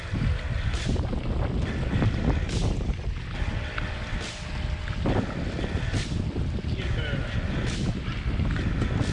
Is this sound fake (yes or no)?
no